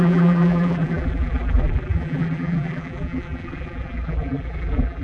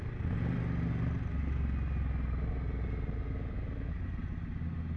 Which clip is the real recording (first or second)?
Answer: second